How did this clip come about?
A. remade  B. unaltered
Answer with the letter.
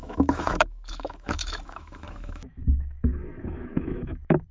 A